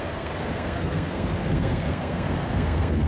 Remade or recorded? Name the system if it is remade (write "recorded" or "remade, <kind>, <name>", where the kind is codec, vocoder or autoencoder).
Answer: remade, codec, SNAC